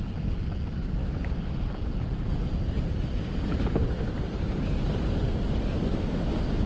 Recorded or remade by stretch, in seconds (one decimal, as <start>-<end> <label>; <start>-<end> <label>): 0.0-1.0 recorded; 1.0-1.6 remade; 1.6-6.7 recorded